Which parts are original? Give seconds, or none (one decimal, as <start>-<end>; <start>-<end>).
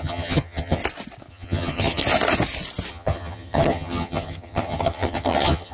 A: 0.8-1.3; 2.0-2.9